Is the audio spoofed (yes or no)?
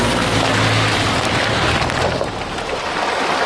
no